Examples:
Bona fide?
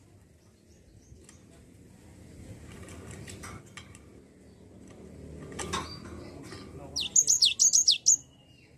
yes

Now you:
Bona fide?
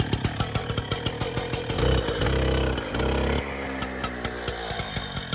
yes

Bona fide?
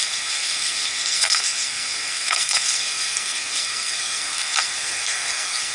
no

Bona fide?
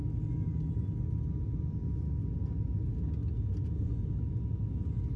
yes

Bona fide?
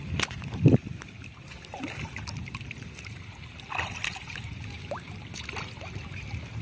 yes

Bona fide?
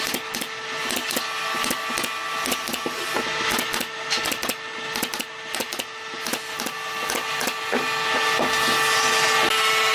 yes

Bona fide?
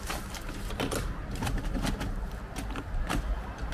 yes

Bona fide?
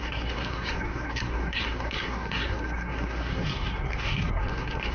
no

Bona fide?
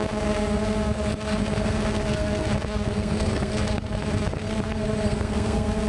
no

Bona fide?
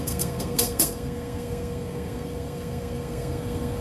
no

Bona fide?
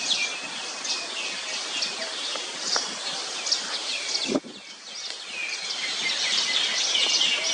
yes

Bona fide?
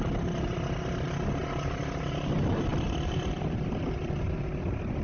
yes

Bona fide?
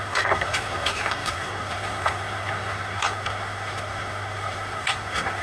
no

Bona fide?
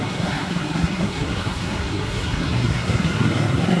no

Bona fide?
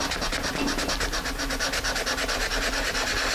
yes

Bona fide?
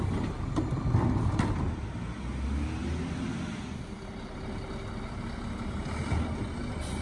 yes